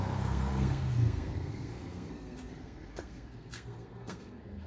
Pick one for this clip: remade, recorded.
remade